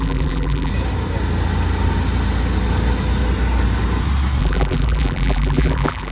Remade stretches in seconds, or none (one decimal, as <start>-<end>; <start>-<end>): 0.0-0.7; 4.4-6.1